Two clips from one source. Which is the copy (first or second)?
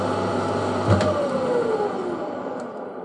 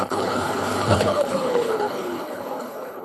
second